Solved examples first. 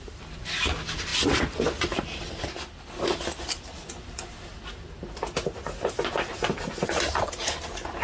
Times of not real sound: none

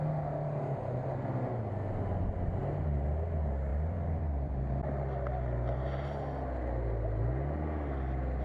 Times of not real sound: 3.7-4.5 (vocoder, BigVGAN v2)

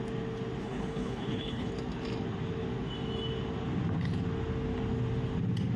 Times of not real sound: 0.6-1.7 (codec, HILCodec)

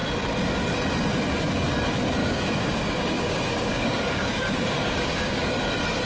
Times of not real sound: 2.2-5.4 (codec, DAC)

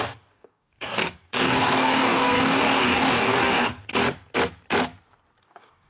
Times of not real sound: 0.0-3.9 (codec, DAC); 5.4-5.9

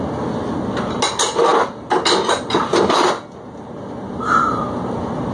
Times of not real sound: none

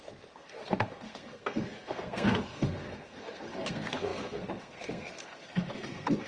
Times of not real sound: 0.0-6.3 (codec, SNAC)